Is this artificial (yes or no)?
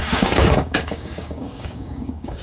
yes